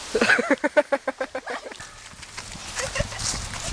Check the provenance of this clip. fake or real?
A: real